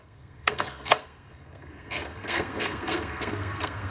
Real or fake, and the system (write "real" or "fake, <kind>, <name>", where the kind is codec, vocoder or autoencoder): fake, codec, SNAC